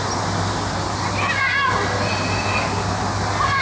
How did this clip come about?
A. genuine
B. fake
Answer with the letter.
A